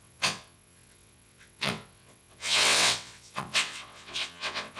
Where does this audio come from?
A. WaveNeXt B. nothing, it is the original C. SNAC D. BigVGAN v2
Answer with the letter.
A